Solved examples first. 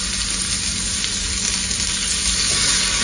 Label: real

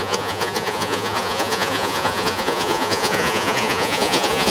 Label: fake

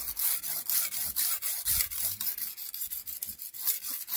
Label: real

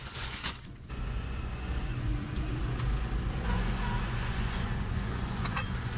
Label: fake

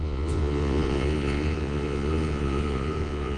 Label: fake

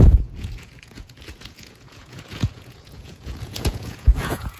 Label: fake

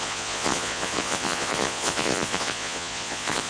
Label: fake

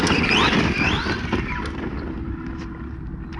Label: real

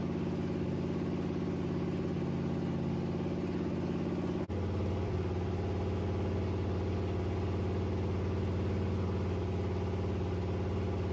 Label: real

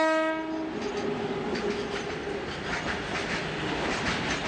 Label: real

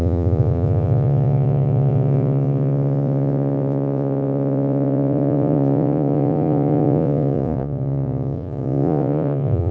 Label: fake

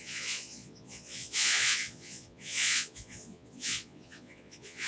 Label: fake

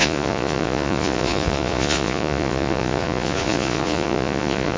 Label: fake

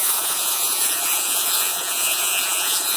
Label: fake